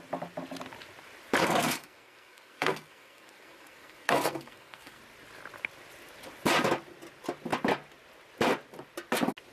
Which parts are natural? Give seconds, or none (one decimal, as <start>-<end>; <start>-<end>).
0.0-1.4; 5.0-9.5